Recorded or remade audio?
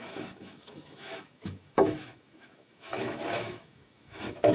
remade